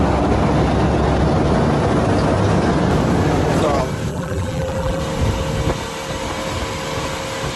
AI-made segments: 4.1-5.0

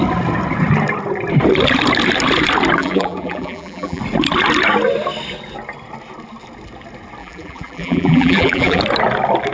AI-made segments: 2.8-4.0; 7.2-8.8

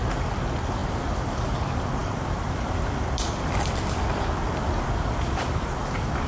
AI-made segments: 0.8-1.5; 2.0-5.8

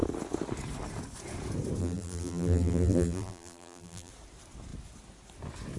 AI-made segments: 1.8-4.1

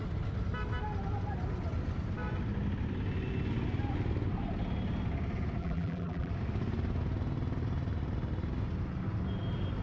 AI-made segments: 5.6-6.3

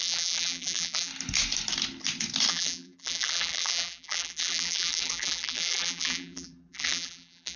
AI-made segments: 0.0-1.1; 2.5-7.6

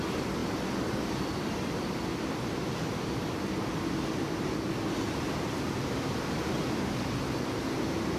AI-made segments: 0.0-0.4; 3.3-8.2